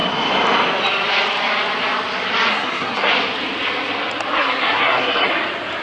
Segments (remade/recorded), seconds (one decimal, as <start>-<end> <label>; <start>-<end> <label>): 0.0-2.5 recorded; 2.5-3.1 remade; 3.1-4.4 recorded; 4.4-5.3 remade; 5.3-5.8 recorded